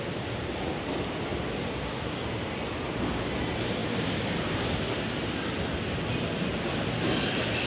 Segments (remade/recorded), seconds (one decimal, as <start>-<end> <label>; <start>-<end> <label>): 0.0-7.7 recorded